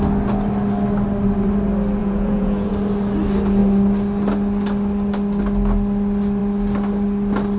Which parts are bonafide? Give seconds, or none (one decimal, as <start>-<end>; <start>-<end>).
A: 0.0-2.0; 2.7-7.6